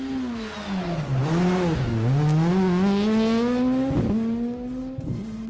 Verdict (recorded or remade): recorded